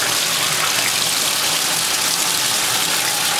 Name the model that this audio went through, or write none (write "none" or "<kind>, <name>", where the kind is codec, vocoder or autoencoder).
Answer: none